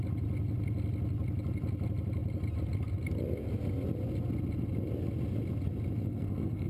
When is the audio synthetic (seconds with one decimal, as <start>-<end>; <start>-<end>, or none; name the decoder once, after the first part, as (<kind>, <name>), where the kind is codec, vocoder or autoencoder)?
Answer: 6.0-6.7 (codec, SNAC)